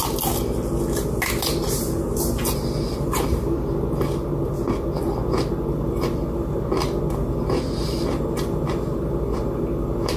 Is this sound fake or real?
real